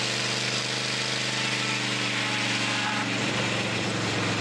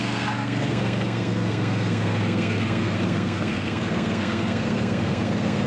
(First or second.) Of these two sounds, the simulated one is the second